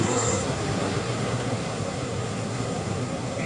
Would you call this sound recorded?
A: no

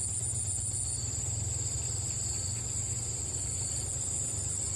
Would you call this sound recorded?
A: yes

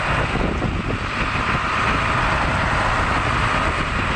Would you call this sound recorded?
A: yes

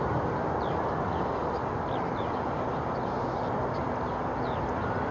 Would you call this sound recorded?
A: yes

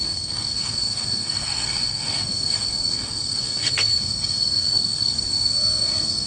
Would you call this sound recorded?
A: no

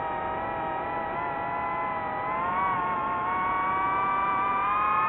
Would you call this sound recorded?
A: yes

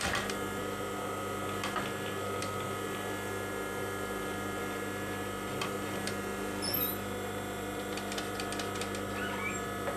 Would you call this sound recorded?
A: yes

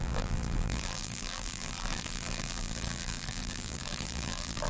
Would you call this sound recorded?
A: no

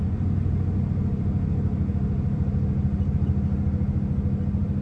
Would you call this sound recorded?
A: yes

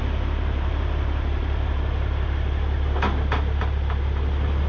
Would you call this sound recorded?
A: yes